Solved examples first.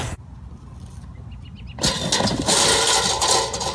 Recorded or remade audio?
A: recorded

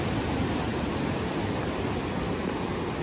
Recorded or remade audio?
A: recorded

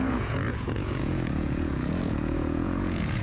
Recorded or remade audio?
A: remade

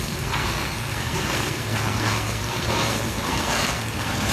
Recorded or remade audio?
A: remade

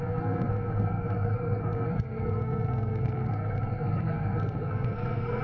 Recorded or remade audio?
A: remade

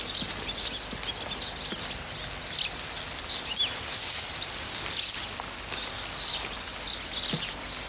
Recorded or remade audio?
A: recorded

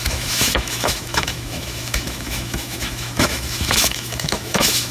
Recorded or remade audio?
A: remade